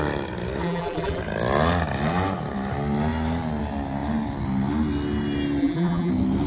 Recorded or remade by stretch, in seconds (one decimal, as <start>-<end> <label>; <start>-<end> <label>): 0.0-0.6 recorded; 0.6-1.2 remade; 1.2-5.6 recorded; 5.6-6.1 remade; 6.1-6.5 recorded